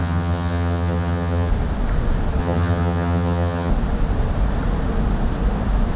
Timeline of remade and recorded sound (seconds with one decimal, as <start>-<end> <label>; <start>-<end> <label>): 0.0-1.5 remade; 1.5-2.4 recorded; 2.4-3.7 remade; 3.7-6.0 recorded